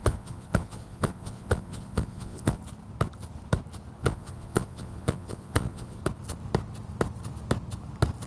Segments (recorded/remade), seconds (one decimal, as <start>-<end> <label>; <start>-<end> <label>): 0.0-2.6 remade; 2.6-4.0 recorded; 4.0-6.0 remade; 6.0-8.3 recorded